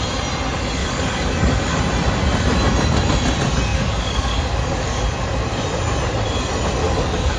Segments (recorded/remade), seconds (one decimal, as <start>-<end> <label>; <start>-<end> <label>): 0.0-0.8 recorded; 0.8-1.8 remade; 1.8-3.7 recorded; 3.7-5.0 remade; 5.0-6.8 recorded; 6.8-7.4 remade